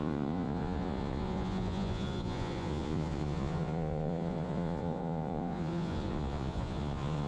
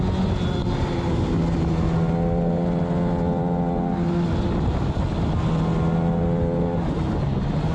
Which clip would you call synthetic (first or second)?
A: first